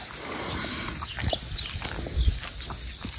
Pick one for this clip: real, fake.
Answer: real